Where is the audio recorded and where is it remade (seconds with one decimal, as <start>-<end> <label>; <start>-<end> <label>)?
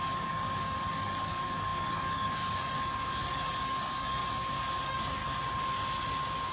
0.0-4.2 remade; 4.2-4.8 recorded; 4.8-5.2 remade; 5.2-6.5 recorded